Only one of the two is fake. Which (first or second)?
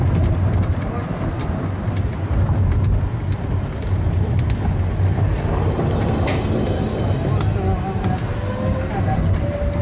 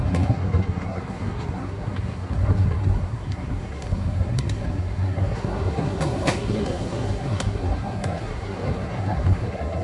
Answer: second